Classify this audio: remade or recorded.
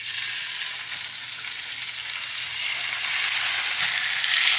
recorded